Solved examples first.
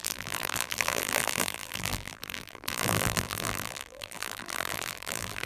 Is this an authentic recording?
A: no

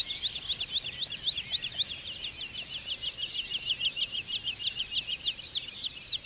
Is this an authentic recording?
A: yes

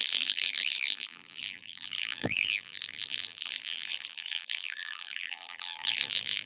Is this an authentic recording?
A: no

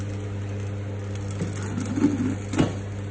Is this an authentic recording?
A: yes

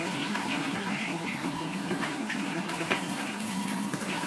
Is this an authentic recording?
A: no